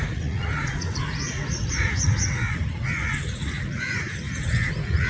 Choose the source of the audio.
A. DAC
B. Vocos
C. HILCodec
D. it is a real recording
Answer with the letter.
B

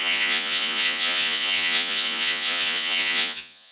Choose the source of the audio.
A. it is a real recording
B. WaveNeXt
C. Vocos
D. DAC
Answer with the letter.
C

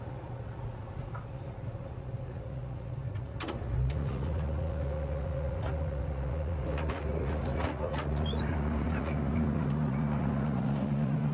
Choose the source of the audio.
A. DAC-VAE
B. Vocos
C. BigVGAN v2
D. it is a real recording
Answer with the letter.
B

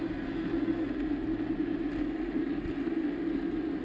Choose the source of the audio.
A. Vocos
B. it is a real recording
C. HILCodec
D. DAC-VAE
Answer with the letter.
B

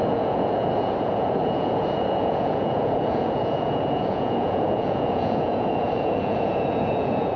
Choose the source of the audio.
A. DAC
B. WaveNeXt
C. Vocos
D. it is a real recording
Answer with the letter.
C